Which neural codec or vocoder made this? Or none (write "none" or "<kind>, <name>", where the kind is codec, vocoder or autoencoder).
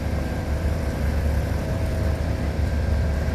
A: vocoder, BigVGAN v2